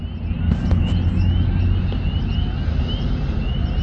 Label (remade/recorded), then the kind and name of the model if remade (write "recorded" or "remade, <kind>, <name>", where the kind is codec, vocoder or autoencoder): recorded